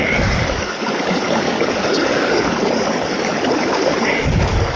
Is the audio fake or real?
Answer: fake